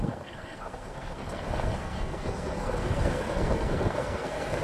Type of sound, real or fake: fake